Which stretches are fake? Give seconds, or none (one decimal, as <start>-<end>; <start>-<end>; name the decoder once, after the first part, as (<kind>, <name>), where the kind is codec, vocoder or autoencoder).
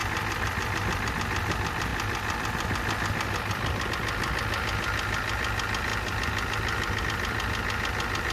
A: 0.0-1.1 (vocoder, BigVGAN v2)